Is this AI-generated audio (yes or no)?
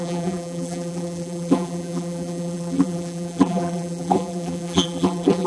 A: yes